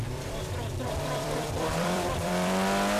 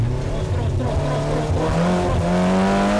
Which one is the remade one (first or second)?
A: first